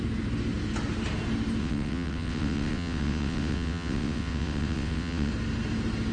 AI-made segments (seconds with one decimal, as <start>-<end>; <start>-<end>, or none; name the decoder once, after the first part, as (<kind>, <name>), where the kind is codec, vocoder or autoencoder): 1.6-5.3 (vocoder, WaveNeXt)